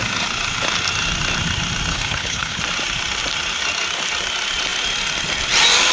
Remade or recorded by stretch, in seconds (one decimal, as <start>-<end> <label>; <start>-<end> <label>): 0.0-1.9 recorded; 1.9-2.6 remade; 2.6-5.9 recorded